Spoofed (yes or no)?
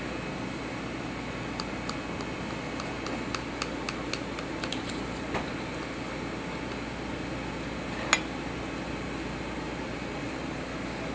no